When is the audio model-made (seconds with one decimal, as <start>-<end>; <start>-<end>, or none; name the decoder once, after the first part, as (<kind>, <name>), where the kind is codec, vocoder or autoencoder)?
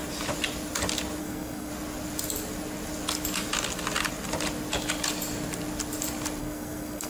1.2-1.7 (codec, SNAC); 6.4-7.1